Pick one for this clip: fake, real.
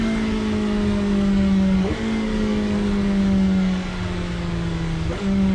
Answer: fake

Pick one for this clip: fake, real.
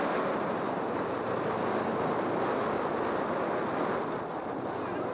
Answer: real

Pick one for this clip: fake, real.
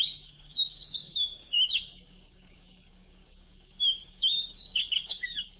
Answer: fake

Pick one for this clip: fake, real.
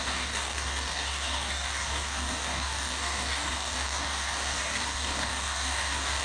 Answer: fake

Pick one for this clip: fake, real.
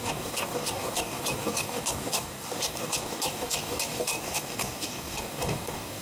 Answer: fake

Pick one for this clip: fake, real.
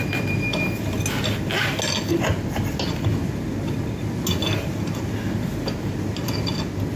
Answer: real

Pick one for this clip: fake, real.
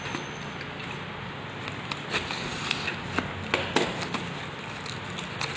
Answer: real